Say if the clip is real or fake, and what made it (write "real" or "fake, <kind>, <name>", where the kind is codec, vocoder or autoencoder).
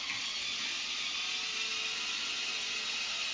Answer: real